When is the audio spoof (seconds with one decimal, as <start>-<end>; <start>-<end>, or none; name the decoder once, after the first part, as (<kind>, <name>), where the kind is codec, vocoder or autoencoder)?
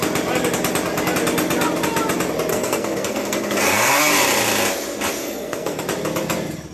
2.5-4.0 (codec, SNAC); 5.2-5.8